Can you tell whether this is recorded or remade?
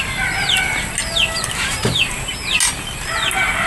recorded